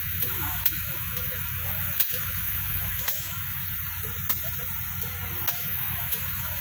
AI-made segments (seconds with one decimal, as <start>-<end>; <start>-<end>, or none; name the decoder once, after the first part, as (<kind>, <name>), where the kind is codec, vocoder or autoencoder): 0.0-3.6 (autoencoder, DAC-VAE); 5.5-6.6